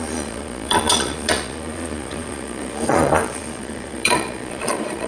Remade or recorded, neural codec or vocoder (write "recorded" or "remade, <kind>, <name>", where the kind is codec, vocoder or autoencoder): remade, vocoder, Vocos